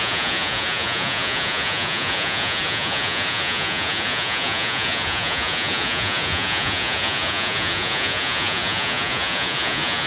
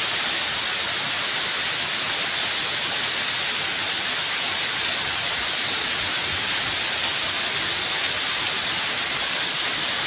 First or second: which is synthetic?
first